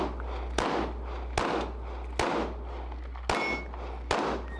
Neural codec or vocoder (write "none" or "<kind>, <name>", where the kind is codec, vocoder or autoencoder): none